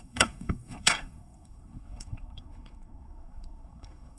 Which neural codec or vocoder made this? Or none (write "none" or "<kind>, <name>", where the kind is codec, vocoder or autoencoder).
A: codec, SNAC